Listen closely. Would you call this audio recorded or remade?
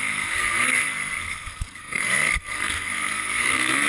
remade